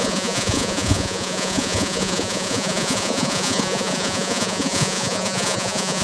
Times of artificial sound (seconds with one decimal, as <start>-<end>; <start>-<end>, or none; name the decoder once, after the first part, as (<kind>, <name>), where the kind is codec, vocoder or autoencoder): 0.0-6.0 (vocoder, Vocos)